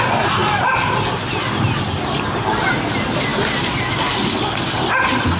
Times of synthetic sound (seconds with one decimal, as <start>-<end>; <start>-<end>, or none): none